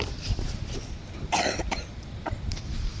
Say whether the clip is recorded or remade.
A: remade